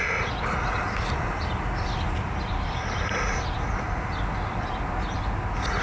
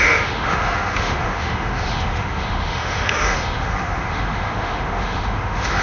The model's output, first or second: second